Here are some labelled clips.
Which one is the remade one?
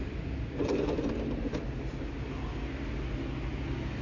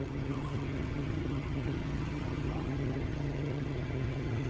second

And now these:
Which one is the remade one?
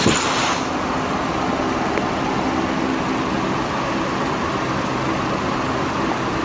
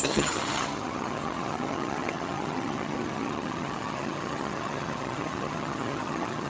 second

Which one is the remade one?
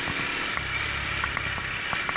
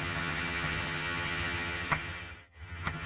second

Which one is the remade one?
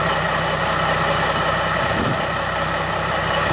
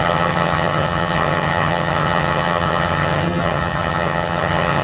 second